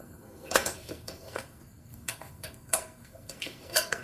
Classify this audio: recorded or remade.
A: remade